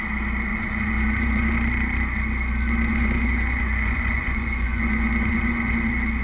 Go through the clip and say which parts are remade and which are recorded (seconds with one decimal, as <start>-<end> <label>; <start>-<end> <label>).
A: 0.0-0.5 recorded; 0.5-1.5 remade; 1.5-2.9 recorded; 2.9-5.7 remade; 5.7-6.2 recorded